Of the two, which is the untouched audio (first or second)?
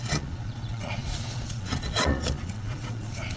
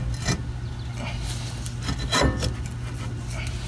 second